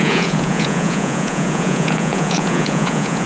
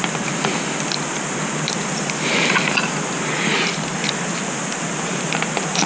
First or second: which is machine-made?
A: first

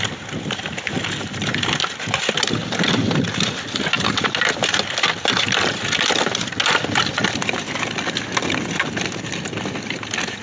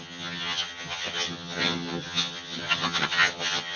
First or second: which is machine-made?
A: second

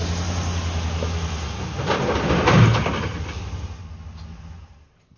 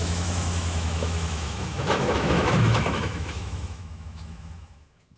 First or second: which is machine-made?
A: second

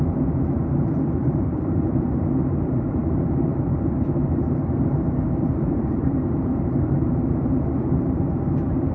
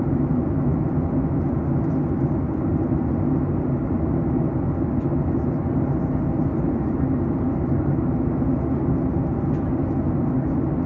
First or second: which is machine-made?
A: first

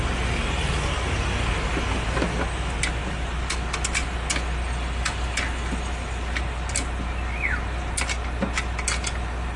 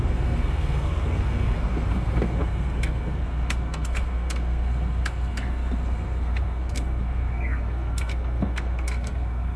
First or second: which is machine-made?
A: second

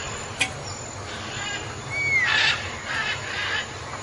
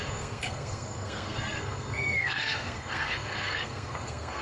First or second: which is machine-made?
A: second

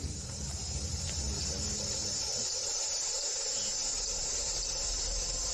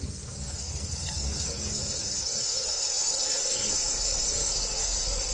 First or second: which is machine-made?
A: second